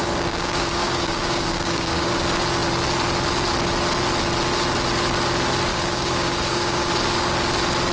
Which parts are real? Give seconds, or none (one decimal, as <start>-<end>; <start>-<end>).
2.1-5.7; 6.9-7.9